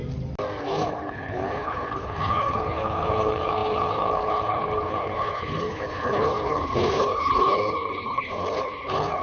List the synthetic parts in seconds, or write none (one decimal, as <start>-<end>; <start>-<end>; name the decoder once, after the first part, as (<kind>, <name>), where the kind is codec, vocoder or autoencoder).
0.6-9.2 (codec, HILCodec)